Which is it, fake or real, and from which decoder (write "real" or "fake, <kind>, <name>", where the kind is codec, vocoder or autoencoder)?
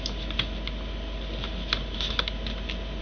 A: real